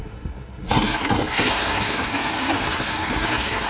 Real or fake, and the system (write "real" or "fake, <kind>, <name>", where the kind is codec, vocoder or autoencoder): fake, codec, SNAC